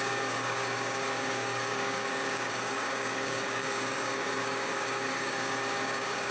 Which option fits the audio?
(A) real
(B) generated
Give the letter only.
B